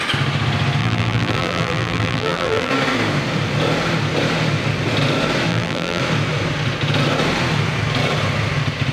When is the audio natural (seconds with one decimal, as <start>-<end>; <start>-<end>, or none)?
0.0-0.8; 2.7-5.5; 6.0-8.9